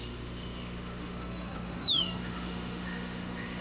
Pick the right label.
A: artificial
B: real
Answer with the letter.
A